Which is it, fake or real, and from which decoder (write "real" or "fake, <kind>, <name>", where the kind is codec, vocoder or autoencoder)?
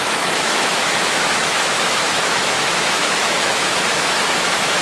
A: fake, autoencoder, DAC-VAE